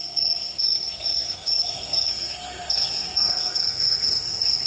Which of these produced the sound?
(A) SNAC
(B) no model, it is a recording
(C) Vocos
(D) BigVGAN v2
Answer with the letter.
A